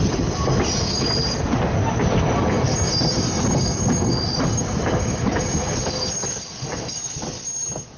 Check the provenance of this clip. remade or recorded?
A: recorded